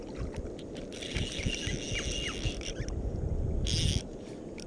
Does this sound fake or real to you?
real